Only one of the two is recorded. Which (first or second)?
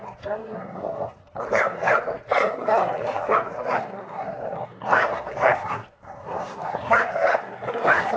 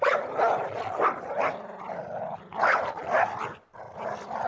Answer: second